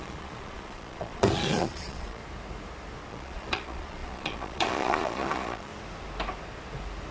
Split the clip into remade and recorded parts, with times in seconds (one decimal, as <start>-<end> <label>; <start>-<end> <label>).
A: 0.0-2.2 remade; 2.2-3.1 recorded; 3.1-5.7 remade; 5.7-7.1 recorded